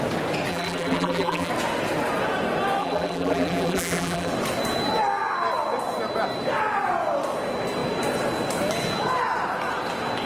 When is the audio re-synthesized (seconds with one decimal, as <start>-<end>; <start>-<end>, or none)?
0.5-1.5; 2.8-4.3